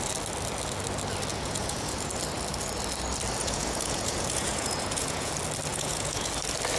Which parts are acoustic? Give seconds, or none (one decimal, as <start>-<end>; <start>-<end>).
0.0-1.3; 2.0-3.4; 5.3-5.7; 6.3-6.8